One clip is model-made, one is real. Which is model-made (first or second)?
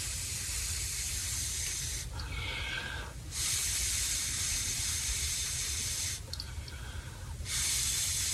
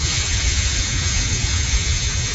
second